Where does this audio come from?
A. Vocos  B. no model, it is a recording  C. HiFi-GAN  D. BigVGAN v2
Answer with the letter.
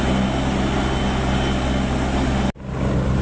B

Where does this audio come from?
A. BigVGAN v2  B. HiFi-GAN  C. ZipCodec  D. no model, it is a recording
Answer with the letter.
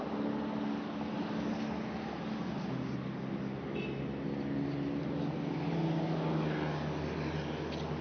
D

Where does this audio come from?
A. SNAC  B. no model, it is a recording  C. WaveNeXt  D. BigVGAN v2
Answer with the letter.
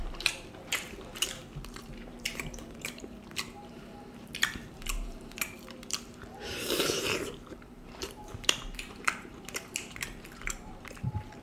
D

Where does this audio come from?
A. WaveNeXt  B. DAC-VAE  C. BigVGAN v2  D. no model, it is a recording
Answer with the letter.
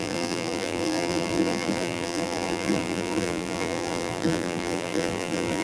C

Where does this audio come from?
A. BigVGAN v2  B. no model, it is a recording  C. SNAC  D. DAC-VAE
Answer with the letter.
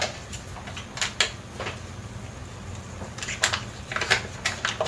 B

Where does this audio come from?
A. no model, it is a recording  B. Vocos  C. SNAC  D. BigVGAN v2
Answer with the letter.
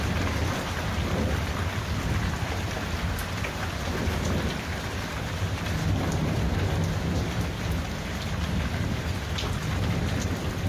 A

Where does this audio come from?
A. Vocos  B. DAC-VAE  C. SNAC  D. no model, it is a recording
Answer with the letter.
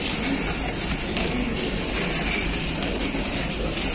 D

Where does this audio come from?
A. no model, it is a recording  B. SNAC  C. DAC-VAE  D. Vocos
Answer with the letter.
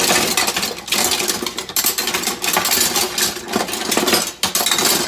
A